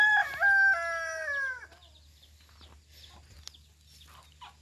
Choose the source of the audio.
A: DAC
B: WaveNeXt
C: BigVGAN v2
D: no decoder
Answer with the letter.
D